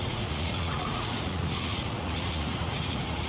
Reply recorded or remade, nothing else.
remade